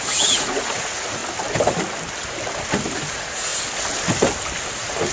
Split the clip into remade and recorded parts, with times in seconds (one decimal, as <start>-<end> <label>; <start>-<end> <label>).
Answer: 0.0-1.2 remade; 1.2-3.1 recorded; 3.1-3.5 remade; 3.5-4.6 recorded; 4.6-5.1 remade